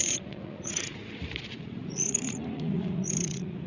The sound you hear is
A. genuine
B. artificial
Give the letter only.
B